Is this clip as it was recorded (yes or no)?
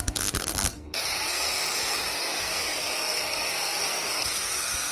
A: no